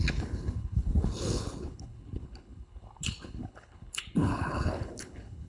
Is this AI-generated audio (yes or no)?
yes